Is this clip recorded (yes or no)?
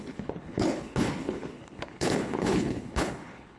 no